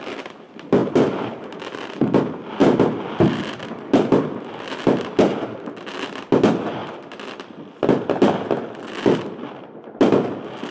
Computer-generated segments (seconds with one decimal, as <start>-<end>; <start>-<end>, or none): 0.8-1.3